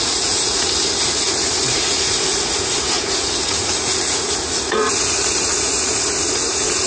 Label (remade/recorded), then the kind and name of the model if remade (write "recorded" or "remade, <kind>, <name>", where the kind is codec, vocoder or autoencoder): remade, vocoder, Vocos